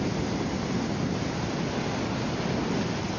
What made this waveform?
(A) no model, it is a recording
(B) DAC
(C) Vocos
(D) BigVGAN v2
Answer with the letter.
A